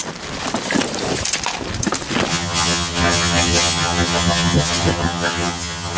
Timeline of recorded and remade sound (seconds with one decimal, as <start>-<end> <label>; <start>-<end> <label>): 0.0-2.3 recorded; 2.3-6.0 remade